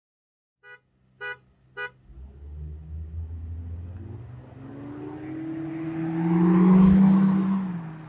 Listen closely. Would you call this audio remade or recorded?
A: recorded